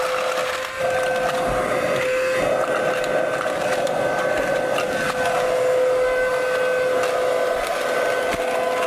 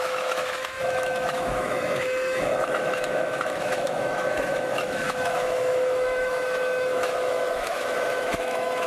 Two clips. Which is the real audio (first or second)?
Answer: first